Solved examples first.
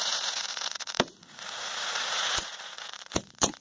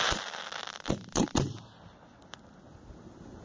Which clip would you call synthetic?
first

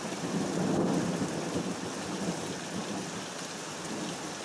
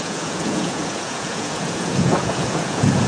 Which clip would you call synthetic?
second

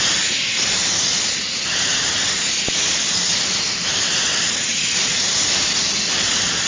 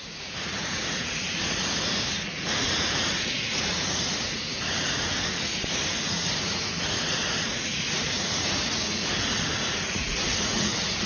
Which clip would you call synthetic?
second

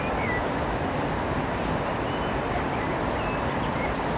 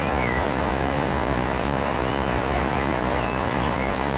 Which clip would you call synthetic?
second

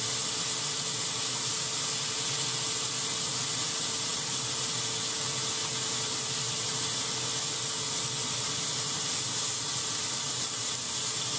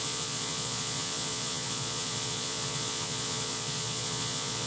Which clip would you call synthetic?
second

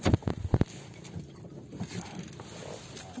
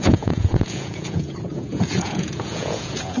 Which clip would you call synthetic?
second